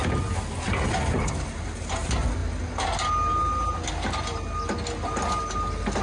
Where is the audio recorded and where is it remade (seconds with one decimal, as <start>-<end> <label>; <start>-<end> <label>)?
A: 0.0-6.0 recorded